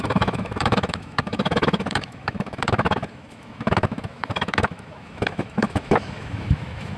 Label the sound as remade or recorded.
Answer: remade